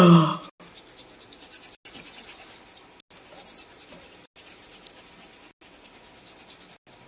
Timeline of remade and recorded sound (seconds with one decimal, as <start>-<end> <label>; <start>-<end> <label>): 0.0-7.1 recorded